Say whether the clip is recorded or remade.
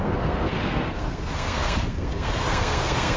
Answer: remade